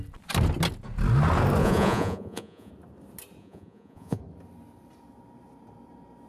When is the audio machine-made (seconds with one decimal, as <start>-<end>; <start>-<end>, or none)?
1.6-2.7; 3.4-4.2